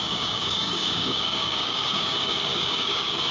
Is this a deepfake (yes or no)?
yes